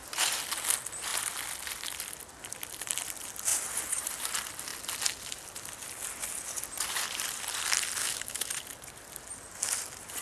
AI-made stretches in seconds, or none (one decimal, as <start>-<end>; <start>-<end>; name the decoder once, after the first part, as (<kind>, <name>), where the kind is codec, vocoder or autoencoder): 8.0-8.5 (autoencoder, DAC-VAE)